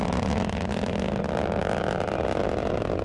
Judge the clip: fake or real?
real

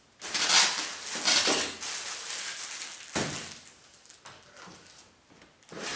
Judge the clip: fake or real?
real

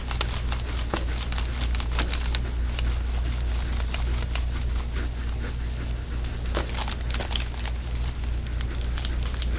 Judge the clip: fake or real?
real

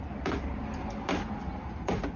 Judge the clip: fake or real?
real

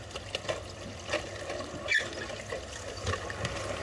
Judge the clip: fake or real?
real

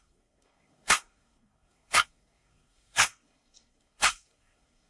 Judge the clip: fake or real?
fake